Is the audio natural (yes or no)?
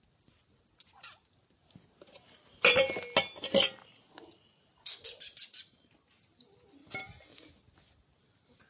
yes